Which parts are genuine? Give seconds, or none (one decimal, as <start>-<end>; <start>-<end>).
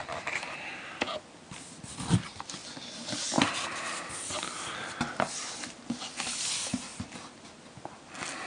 0.0-8.5